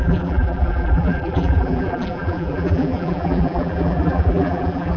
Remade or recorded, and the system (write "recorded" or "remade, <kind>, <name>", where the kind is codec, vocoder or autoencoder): remade, vocoder, BigVGAN v2